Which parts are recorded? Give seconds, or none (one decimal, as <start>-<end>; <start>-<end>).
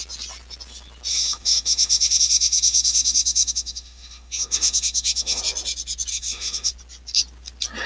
0.0-1.1; 5.4-6.1; 6.7-7.9